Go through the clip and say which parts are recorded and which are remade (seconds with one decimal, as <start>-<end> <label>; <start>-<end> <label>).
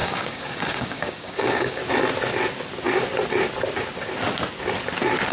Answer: 0.0-1.8 remade; 1.8-5.3 recorded